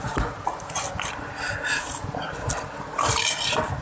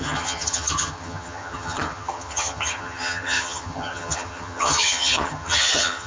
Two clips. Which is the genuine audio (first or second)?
first